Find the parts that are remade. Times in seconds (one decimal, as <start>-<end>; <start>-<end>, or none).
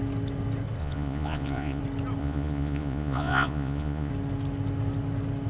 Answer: 0.8-1.8; 2.2-4.1